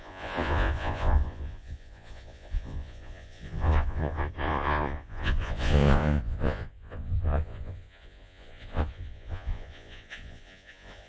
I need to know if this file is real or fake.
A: fake